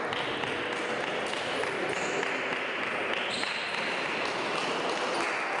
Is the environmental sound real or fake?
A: real